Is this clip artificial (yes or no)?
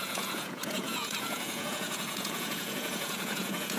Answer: yes